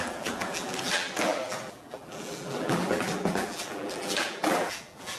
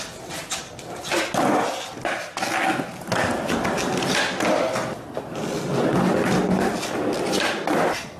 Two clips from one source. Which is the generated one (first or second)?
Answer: first